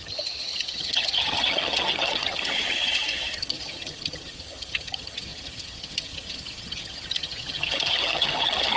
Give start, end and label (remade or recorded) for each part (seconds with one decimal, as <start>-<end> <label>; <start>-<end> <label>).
0.0-8.8 remade